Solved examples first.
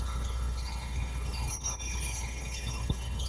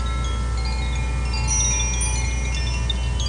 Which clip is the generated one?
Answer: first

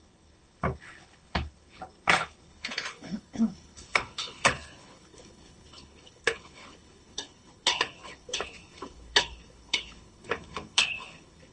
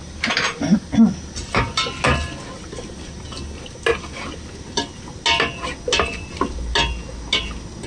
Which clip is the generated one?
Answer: first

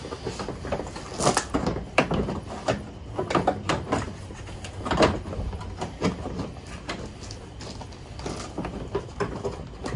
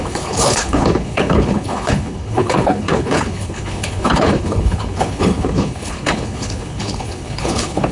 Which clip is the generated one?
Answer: second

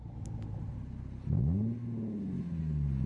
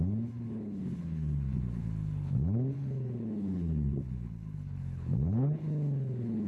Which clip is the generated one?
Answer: second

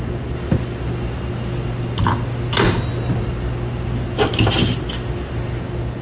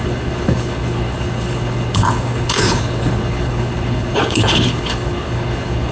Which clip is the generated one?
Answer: second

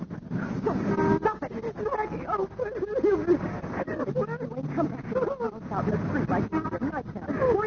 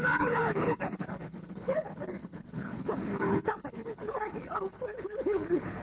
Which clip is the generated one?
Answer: second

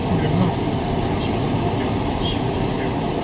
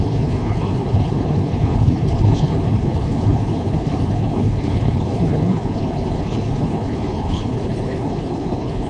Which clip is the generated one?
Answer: second